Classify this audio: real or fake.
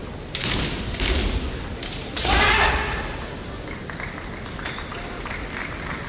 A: real